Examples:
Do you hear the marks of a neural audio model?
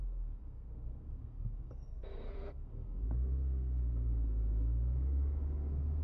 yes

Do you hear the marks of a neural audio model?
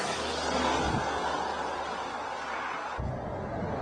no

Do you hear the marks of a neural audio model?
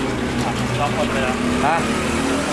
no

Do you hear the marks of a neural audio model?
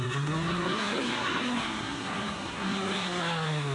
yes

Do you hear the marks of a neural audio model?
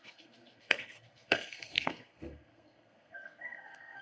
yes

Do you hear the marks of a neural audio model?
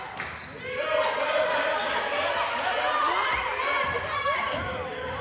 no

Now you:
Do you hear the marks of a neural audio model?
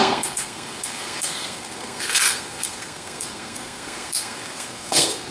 yes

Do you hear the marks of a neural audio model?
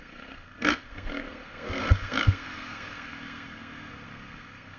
yes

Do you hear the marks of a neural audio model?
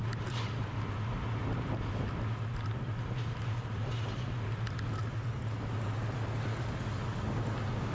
no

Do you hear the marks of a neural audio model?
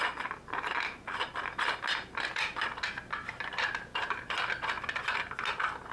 no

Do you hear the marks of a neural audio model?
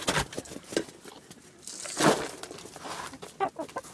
no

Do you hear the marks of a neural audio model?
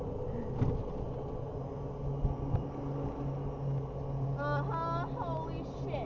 no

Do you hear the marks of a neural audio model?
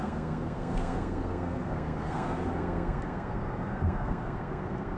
yes